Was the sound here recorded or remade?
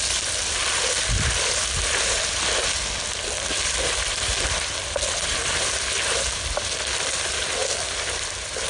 recorded